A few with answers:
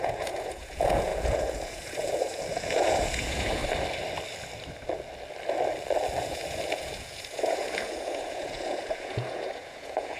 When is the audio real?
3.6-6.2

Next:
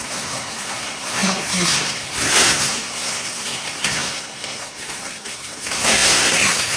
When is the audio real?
none